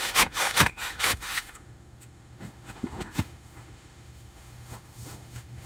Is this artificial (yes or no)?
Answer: yes